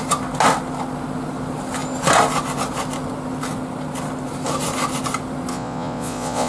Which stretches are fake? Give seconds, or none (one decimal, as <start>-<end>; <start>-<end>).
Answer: 5.5-6.5